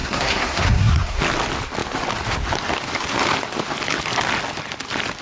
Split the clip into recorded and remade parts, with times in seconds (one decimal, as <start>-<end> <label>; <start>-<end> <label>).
0.0-1.2 remade; 1.2-5.2 recorded